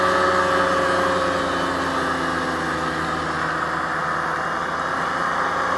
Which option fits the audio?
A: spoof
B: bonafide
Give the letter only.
B